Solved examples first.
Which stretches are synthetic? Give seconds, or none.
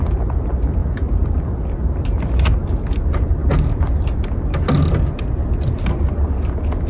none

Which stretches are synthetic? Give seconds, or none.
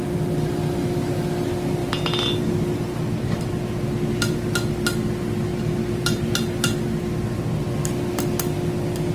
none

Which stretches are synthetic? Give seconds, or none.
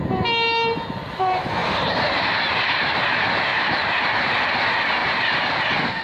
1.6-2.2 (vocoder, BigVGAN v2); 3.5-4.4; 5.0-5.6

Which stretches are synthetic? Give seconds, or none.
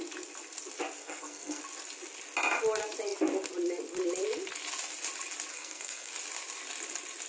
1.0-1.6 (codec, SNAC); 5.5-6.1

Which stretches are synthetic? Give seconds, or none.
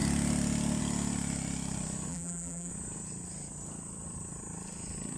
2.1-2.7 (vocoder, BigVGAN v2)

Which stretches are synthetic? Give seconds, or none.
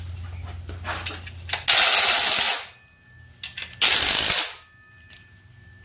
none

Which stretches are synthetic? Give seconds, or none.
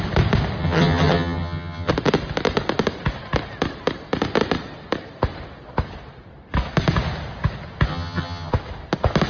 0.6-1.9 (vocoder, HiFi-GAN); 7.9-8.5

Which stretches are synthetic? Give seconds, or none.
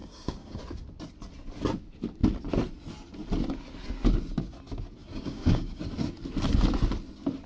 0.0-0.6 (codec, DAC); 5.0-5.8